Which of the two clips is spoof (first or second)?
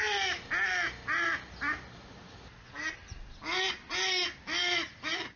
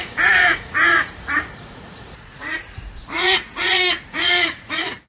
second